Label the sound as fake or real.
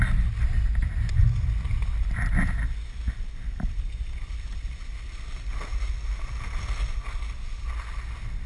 real